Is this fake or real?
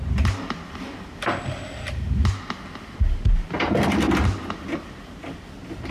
real